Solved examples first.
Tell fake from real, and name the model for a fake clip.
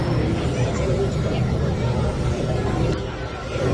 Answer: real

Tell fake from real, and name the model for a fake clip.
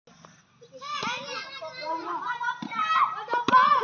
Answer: real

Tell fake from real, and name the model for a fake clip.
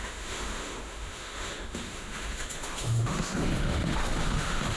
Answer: fake, autoencoder, DAC-VAE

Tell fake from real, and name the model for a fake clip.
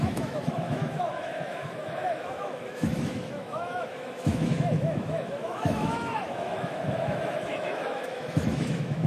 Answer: fake, autoencoder, DAC-VAE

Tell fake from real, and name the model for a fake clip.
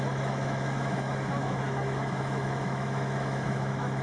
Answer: fake, autoencoder, DAC-VAE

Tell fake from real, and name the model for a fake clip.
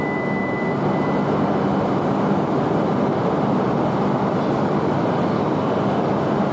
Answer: real